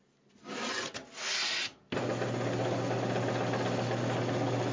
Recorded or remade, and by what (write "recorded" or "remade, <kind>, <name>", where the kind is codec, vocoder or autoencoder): recorded